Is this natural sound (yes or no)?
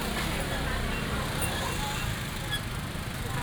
yes